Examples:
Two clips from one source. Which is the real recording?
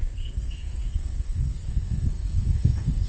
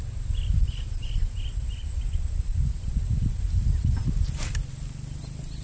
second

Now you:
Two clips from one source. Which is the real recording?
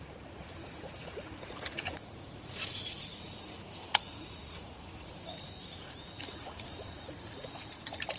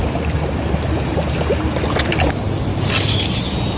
second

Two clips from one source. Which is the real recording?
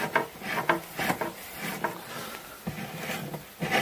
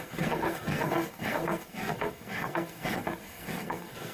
first